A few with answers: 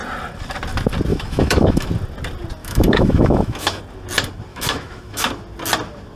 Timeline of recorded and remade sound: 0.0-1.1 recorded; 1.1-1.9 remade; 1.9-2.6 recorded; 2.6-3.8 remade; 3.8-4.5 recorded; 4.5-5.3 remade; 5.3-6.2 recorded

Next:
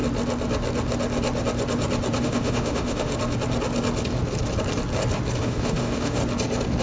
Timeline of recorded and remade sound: 0.0-2.2 recorded; 2.2-3.1 remade; 3.1-5.4 recorded; 5.4-6.2 remade; 6.2-6.8 recorded

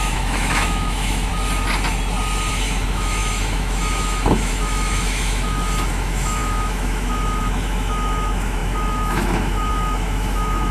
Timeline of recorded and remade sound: 0.0-1.3 remade; 1.3-2.5 recorded; 2.5-10.7 remade

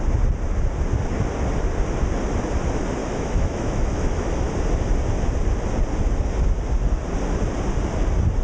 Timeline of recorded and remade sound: 0.0-3.0 recorded; 3.0-4.5 remade; 4.5-8.4 recorded

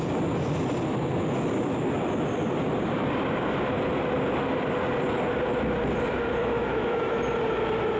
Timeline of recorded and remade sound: 0.0-6.4 recorded; 6.4-7.2 remade; 7.2-8.0 recorded

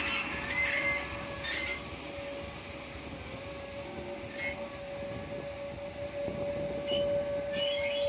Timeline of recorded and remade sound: 0.0-8.1 recorded

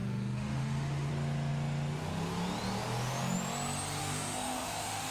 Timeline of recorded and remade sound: 0.0-1.1 remade; 1.1-4.0 recorded; 4.0-5.1 remade